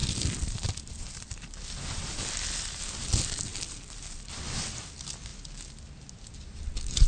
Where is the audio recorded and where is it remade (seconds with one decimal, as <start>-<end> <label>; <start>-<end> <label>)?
0.0-2.8 remade; 2.8-7.1 recorded